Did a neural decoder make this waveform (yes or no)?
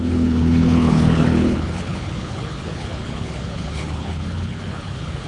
yes